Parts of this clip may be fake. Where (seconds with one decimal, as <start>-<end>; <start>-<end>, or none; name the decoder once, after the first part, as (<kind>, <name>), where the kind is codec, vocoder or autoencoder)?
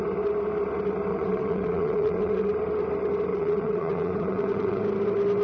1.1-2.4 (vocoder, WaveNeXt); 3.3-4.8